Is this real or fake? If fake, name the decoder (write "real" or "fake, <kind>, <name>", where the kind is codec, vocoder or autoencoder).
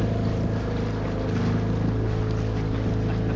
real